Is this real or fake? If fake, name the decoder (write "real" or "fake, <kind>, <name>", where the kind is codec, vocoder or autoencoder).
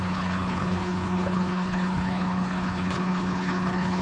fake, codec, HILCodec